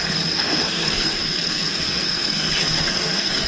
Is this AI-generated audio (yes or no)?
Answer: yes